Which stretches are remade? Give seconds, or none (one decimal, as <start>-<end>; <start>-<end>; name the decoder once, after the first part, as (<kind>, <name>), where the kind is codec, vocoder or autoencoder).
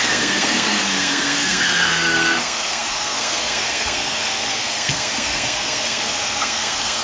0.0-7.0 (codec, SNAC)